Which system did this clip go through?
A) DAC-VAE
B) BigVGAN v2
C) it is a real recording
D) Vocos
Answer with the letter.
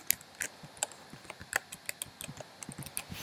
C